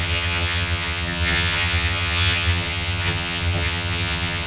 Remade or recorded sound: remade